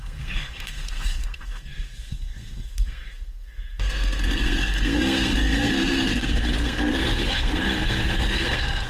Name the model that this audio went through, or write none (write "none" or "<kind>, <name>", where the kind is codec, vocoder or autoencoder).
codec, SNAC